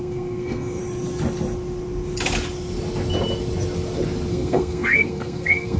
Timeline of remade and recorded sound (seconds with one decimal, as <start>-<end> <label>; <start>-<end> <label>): 0.0-0.8 remade; 0.8-4.3 recorded; 4.3-5.8 remade